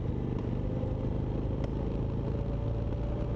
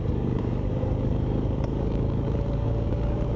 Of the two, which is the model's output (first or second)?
second